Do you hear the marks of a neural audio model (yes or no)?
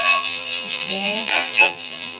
yes